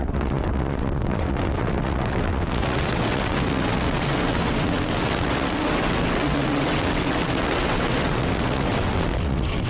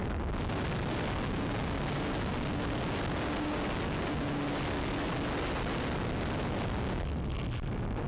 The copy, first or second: first